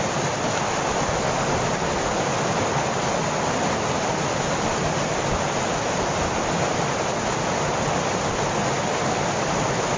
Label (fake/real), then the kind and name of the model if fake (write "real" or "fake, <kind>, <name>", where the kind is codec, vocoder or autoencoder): real